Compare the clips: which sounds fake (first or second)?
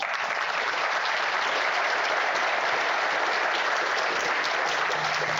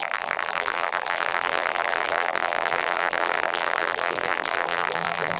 second